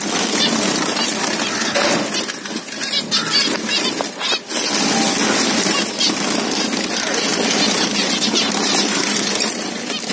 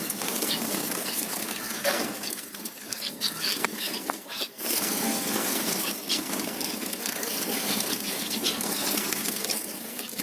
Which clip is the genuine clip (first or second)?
first